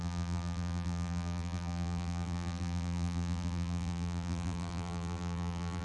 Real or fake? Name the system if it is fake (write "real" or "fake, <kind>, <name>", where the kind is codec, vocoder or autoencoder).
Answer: fake, vocoder, BigVGAN v2